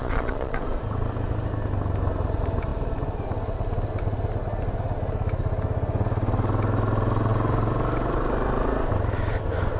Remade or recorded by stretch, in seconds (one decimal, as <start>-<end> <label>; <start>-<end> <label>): 0.0-0.6 remade; 0.6-9.8 recorded